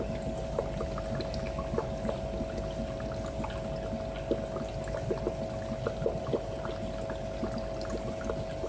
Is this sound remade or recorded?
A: recorded